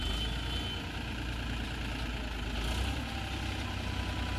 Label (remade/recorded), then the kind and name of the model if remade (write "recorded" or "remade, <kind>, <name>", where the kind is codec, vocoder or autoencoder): recorded